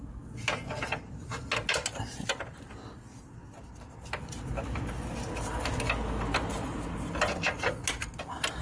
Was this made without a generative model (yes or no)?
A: yes